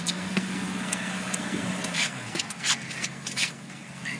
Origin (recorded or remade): remade